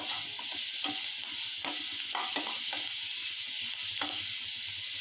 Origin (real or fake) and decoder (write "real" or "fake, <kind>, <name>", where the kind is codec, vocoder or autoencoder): real